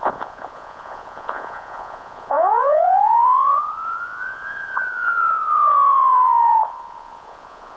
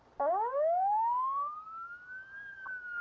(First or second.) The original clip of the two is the second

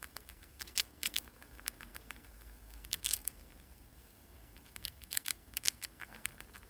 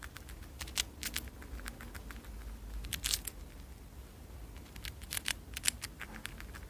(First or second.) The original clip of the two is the second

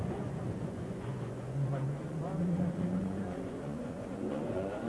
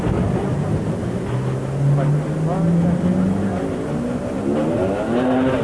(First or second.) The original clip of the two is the second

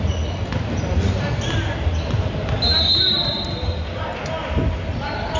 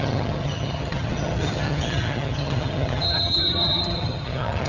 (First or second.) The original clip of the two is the first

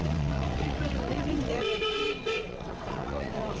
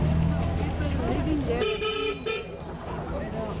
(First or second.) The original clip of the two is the second